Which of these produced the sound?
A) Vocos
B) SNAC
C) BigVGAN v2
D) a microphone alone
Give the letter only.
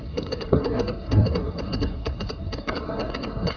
B